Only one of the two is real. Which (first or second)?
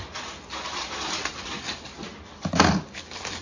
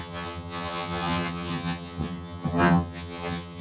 first